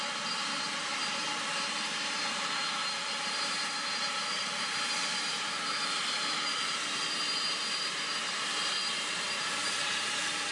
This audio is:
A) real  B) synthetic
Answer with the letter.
B